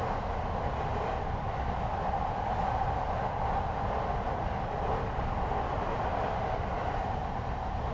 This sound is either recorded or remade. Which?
recorded